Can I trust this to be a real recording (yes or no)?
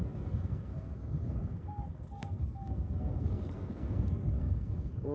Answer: no